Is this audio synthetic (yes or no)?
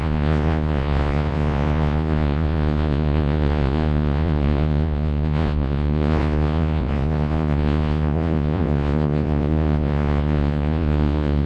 yes